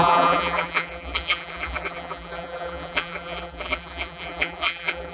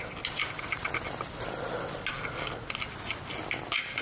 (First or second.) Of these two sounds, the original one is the second